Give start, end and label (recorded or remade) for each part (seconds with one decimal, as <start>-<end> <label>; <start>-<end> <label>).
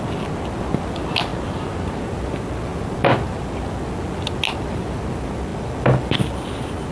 0.0-5.5 recorded; 5.5-6.2 remade; 6.2-6.9 recorded